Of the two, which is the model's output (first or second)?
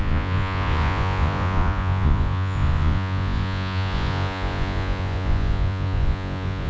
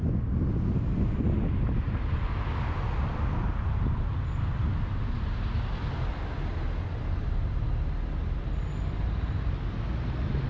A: first